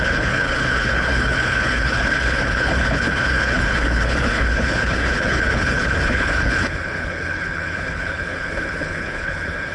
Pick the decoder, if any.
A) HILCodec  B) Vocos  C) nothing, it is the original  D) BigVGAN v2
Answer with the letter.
A